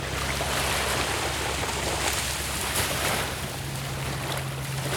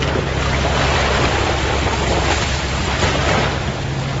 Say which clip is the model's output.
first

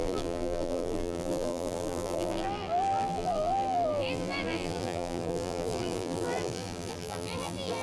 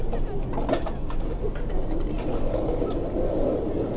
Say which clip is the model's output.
first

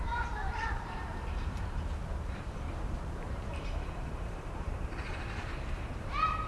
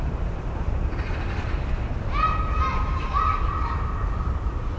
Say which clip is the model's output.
first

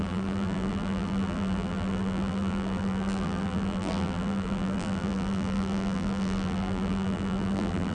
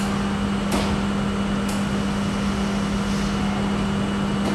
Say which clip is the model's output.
first